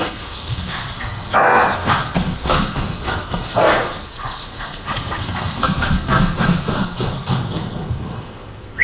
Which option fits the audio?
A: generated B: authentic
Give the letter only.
A